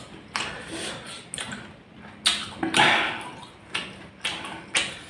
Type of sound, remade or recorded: recorded